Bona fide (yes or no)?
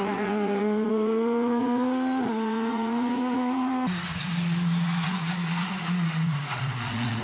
no